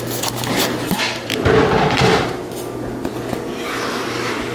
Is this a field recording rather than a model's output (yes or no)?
yes